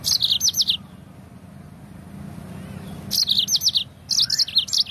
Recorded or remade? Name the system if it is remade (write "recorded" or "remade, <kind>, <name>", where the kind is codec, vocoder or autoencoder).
recorded